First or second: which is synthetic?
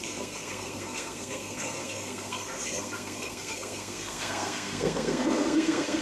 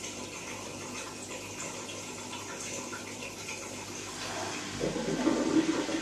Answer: first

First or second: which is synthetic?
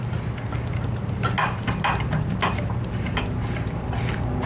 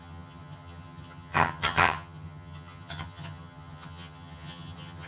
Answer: second